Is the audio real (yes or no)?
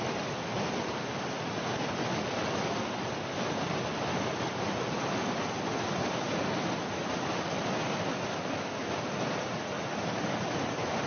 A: yes